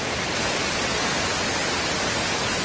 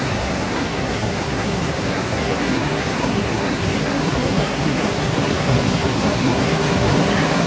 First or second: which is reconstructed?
second